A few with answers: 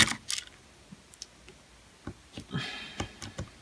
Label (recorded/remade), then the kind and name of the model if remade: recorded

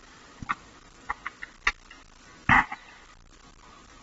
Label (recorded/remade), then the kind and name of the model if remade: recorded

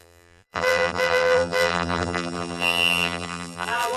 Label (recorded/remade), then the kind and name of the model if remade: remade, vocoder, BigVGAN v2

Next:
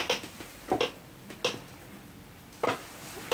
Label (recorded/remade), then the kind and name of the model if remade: recorded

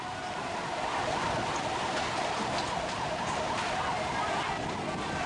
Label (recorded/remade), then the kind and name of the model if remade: recorded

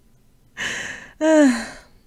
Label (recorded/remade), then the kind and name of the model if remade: recorded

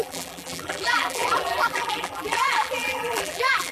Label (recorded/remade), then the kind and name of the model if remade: remade, vocoder, BigVGAN v2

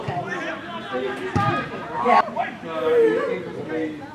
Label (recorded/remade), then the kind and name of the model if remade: recorded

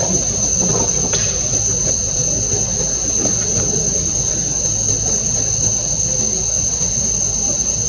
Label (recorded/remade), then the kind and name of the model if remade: recorded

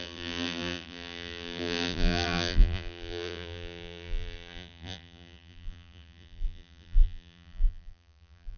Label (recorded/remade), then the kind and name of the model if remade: remade, vocoder, BigVGAN v2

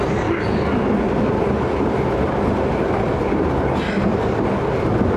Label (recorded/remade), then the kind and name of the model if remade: recorded